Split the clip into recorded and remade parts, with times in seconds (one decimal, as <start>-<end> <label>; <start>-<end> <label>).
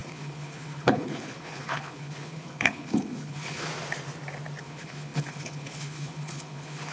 0.0-3.7 remade; 3.7-4.6 recorded; 4.6-6.9 remade